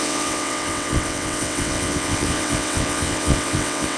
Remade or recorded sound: remade